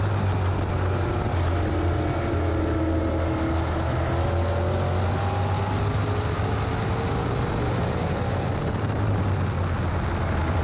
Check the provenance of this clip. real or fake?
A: real